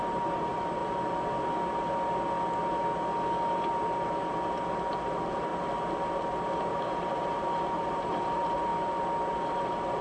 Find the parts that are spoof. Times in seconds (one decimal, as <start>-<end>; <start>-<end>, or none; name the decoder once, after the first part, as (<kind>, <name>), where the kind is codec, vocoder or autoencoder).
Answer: 0.0-0.8 (vocoder, BigVGAN v2); 4.9-5.5; 6.7-8.7; 9.3-10.0